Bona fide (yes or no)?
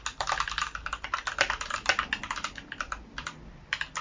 yes